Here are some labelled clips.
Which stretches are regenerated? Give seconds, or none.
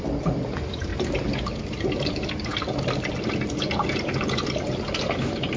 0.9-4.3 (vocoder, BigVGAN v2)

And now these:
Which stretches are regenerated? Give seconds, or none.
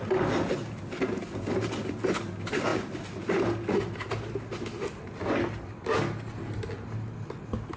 none